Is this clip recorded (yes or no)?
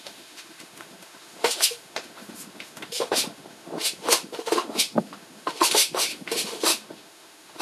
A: no